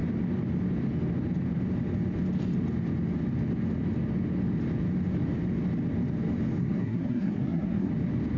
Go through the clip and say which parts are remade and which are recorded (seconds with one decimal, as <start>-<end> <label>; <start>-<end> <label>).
0.0-6.6 recorded; 6.6-7.9 remade; 7.9-8.4 recorded